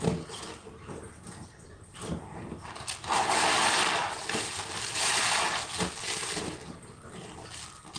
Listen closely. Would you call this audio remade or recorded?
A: recorded